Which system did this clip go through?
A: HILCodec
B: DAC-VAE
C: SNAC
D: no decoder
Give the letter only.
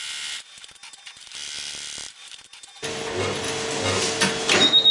D